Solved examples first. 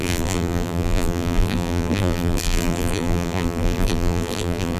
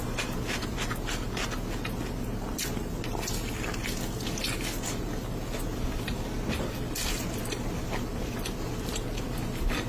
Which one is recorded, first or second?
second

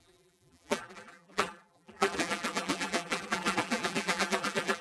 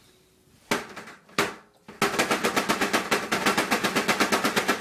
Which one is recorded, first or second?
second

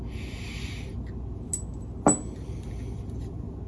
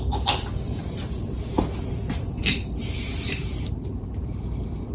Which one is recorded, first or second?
first